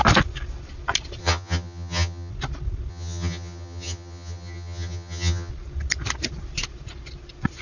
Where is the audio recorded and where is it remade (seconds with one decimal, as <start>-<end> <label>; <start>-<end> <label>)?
0.0-1.2 recorded; 1.2-2.3 remade; 2.3-2.9 recorded; 2.9-5.5 remade; 5.5-7.6 recorded

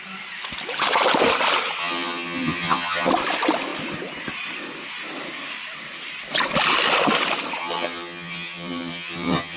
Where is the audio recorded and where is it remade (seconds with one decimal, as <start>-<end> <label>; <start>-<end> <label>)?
0.0-1.8 recorded; 1.8-3.1 remade; 3.1-7.6 recorded; 7.6-9.6 remade